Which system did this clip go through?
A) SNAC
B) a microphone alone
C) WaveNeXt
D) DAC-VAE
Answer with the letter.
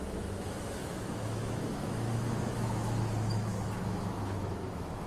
D